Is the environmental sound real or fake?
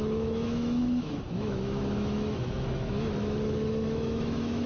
fake